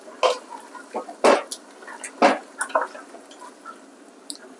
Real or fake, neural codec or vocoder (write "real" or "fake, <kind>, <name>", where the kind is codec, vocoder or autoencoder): real